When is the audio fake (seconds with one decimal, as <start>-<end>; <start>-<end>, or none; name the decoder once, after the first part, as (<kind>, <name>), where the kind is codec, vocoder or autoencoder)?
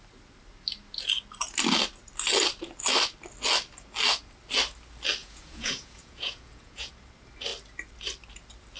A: 5.2-6.9 (vocoder, Vocos)